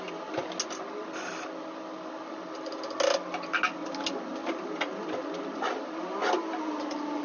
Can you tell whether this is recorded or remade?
recorded